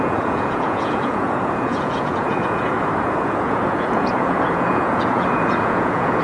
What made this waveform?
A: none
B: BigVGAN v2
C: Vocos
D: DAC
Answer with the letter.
C